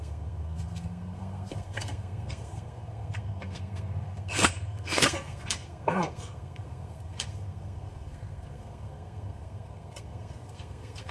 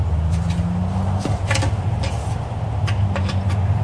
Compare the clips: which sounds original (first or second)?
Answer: second